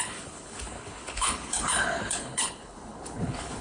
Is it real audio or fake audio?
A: fake